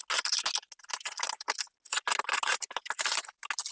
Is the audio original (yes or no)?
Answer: yes